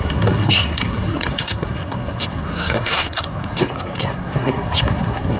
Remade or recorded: remade